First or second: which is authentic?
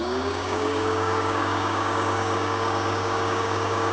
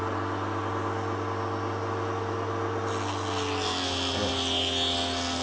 second